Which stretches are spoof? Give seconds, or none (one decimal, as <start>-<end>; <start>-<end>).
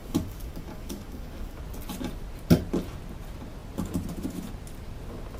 0.0-1.6